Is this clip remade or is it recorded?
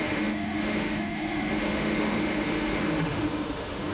remade